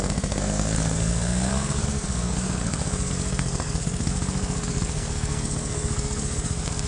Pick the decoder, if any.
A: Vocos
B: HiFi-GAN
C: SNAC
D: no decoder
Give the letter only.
C